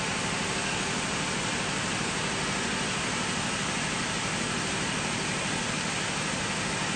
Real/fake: real